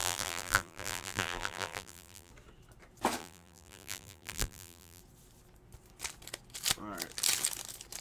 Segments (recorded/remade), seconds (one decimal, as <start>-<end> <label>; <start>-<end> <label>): 0.0-2.3 remade; 2.3-3.2 recorded; 3.2-5.0 remade; 5.0-8.0 recorded